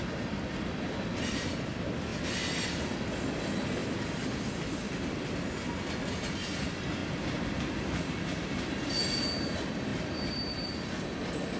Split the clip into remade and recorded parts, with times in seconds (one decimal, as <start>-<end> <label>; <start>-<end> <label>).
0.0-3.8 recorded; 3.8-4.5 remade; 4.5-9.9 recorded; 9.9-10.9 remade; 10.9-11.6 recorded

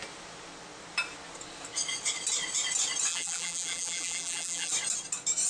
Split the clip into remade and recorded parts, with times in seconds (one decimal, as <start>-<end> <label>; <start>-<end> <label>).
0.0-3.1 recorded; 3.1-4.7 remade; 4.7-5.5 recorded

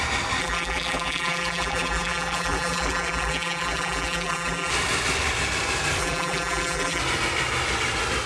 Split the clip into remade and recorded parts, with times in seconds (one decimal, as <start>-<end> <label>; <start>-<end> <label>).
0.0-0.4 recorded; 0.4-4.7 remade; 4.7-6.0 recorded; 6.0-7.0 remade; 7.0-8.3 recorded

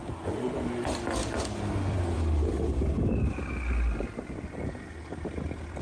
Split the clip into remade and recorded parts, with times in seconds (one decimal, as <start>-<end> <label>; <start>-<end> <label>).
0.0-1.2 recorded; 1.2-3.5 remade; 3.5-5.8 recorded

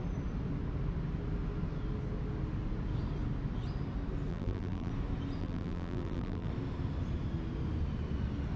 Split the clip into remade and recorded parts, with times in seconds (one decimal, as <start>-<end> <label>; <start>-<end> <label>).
0.0-4.3 recorded; 4.3-4.9 remade; 4.9-5.4 recorded; 5.4-6.5 remade; 6.5-8.6 recorded